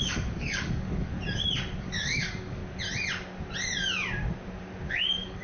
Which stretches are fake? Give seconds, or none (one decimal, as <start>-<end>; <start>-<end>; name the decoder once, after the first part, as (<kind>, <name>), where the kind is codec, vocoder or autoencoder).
0.0-1.1 (codec, DAC); 1.8-2.6; 4.9-5.4